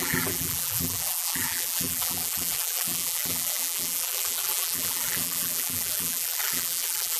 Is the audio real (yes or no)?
no